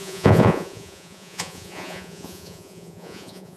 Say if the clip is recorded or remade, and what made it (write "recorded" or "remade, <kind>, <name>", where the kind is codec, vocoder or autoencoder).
remade, vocoder, Vocos